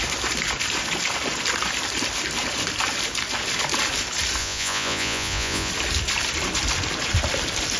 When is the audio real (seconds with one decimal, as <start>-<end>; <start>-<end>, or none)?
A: 0.0-4.4; 5.7-7.8